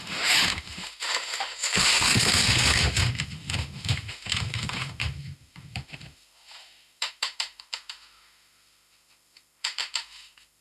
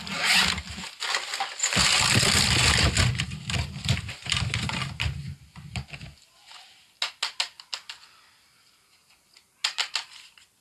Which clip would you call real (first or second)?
second